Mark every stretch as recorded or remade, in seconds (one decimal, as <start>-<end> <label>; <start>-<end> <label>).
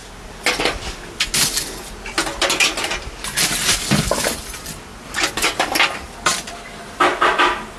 0.0-7.8 recorded